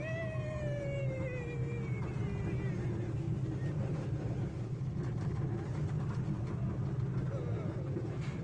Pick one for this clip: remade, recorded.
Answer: recorded